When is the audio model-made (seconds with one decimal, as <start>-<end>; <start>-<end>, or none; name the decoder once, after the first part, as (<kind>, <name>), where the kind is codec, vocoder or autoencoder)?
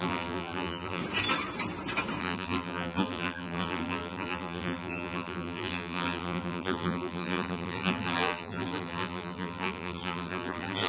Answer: 0.0-1.0 (vocoder, BigVGAN v2); 2.2-10.9